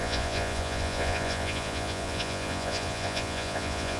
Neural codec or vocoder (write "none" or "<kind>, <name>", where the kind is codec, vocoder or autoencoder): vocoder, Vocos